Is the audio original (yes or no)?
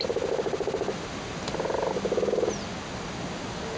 yes